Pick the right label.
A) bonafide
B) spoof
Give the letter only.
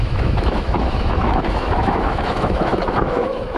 B